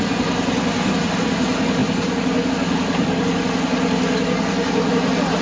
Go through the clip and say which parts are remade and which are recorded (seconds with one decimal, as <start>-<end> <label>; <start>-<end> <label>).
0.0-5.4 recorded